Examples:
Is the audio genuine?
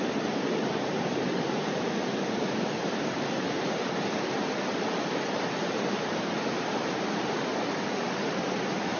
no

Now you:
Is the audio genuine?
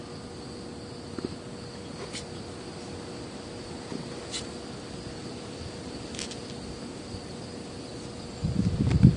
yes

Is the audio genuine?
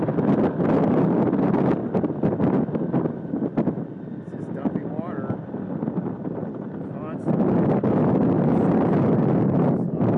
yes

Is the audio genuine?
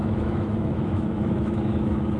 no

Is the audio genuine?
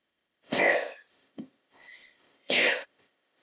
no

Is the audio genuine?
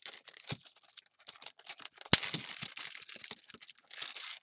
yes